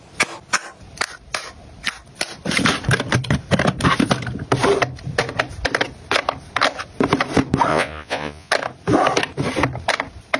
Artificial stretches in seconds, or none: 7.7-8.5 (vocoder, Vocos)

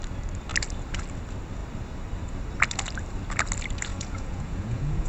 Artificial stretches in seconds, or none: 3.9-5.1 (vocoder, Vocos)

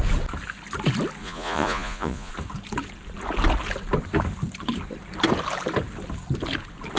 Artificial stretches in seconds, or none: 1.2-2.3 (vocoder, Vocos)